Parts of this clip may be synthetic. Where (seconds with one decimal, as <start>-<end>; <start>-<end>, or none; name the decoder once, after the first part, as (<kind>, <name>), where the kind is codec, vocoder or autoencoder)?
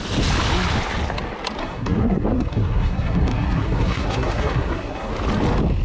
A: 1.6-5.1 (codec, SNAC)